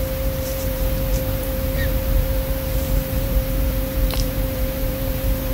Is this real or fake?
fake